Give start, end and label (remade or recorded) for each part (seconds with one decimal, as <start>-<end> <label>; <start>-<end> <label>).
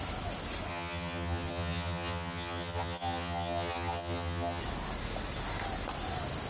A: 0.0-0.7 recorded; 0.7-4.6 remade; 4.6-6.5 recorded